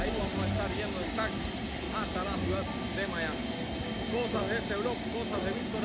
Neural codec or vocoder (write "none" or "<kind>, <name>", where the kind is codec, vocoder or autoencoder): none